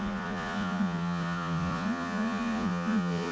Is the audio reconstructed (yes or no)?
yes